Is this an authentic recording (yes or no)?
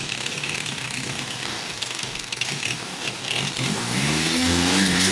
no